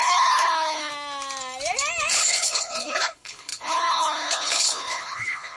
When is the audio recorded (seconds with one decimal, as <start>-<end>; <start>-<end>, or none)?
0.9-2.1